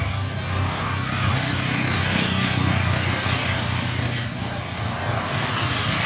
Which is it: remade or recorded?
remade